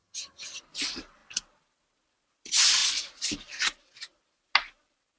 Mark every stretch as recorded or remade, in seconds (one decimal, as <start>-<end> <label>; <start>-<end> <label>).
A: 0.0-0.6 remade; 0.6-5.2 recorded